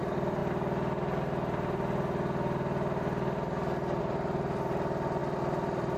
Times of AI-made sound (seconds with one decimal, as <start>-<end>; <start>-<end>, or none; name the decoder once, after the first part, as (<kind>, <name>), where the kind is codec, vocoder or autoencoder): 0.0-0.4 (vocoder, BigVGAN v2); 4.0-6.0